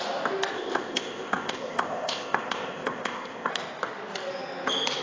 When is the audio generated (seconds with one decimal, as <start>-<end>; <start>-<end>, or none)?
0.5-3.5